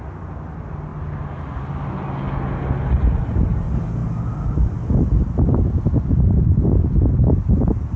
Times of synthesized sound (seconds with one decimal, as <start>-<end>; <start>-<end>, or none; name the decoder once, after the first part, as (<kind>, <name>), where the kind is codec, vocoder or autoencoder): none